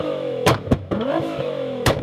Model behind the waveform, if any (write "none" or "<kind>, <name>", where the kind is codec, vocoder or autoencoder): autoencoder, DAC-VAE